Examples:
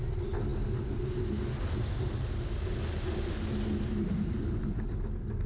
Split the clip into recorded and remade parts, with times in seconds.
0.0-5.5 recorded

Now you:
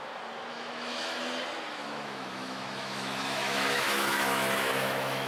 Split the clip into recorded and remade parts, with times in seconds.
0.0-0.5 recorded; 0.5-1.2 remade; 1.2-1.7 recorded; 1.7-5.3 remade

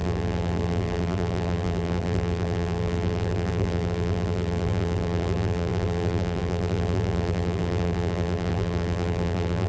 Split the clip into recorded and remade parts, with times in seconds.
0.0-9.7 remade

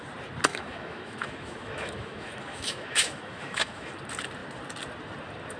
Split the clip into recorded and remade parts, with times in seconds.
0.0-0.5 recorded; 0.5-3.9 remade; 3.9-5.6 recorded

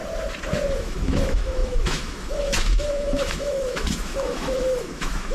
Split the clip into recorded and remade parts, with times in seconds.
0.0-0.7 recorded; 0.7-5.3 remade

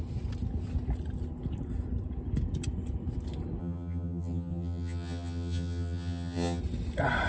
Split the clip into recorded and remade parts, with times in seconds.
0.0-3.6 recorded; 3.6-6.6 remade; 6.6-7.3 recorded